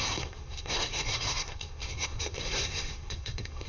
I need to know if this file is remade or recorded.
remade